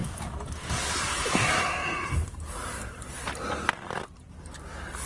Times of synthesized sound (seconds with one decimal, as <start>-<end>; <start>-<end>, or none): none